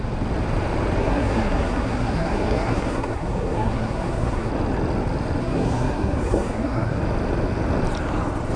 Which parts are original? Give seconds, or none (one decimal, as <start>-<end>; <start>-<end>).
0.0-1.0; 4.5-5.4; 7.0-8.6